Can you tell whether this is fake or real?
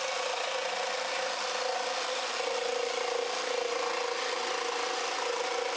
real